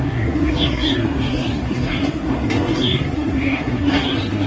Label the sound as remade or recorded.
remade